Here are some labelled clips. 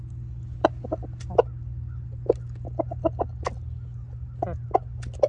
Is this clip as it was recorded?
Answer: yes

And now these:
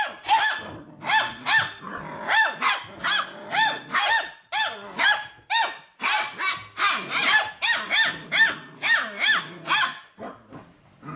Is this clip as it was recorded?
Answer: yes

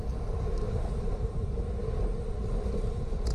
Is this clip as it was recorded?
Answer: yes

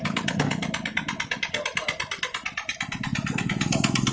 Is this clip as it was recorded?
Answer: yes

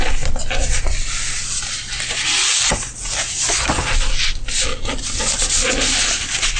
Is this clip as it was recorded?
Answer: yes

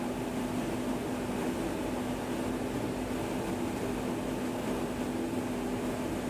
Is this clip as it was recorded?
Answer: yes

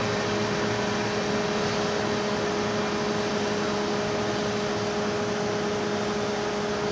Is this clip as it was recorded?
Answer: yes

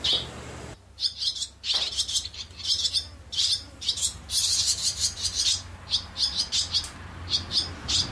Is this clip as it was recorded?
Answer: yes